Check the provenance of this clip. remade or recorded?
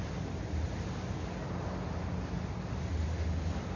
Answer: recorded